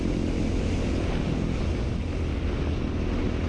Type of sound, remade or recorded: recorded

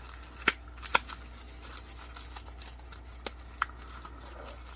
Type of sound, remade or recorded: recorded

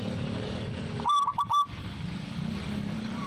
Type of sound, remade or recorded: remade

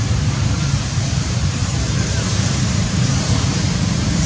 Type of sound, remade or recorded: remade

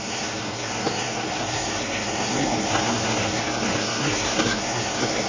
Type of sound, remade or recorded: remade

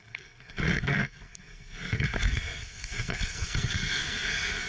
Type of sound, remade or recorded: remade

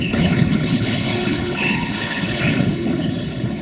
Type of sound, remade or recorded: remade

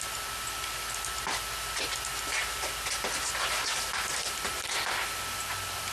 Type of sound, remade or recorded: recorded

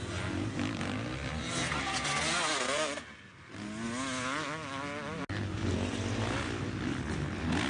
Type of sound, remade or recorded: recorded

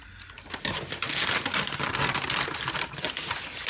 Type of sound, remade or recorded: recorded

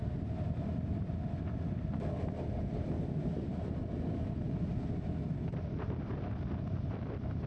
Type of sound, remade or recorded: recorded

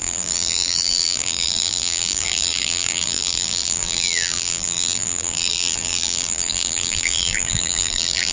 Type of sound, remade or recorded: remade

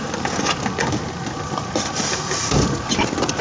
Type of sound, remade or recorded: recorded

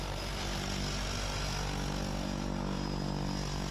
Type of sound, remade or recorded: recorded